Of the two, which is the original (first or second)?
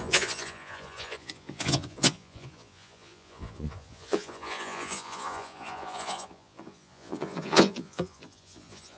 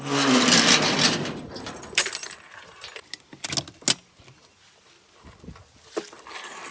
second